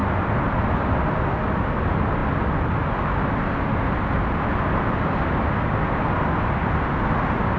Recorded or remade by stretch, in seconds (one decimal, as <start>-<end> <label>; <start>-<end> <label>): 0.0-7.6 recorded